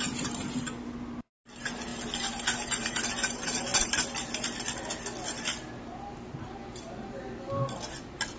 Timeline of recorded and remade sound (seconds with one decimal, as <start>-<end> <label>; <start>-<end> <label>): 0.0-8.4 recorded